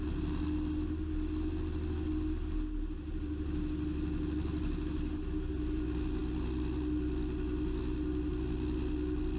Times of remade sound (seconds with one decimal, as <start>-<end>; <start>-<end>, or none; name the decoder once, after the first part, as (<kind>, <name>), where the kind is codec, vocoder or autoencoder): none